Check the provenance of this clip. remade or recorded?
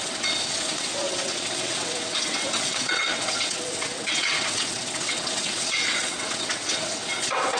remade